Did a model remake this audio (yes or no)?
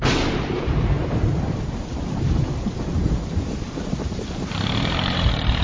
yes